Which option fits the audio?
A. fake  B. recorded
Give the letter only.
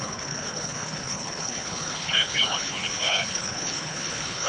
A